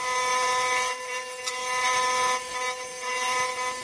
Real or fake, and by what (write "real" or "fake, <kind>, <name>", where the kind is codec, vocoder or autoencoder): real